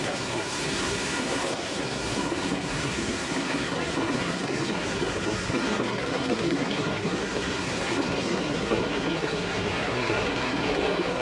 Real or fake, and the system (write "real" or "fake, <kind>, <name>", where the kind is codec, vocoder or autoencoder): fake, codec, SNAC